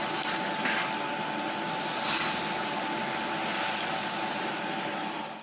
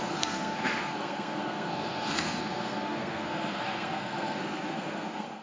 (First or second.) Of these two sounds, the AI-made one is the second